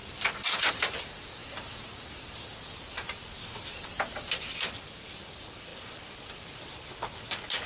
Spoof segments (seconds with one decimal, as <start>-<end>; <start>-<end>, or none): none